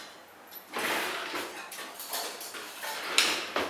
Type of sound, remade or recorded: recorded